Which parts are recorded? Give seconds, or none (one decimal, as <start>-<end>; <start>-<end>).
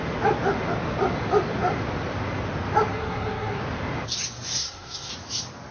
0.0-2.9; 3.6-4.6; 5.1-5.7